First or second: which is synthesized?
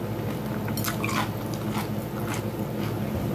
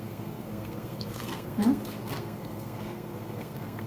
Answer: second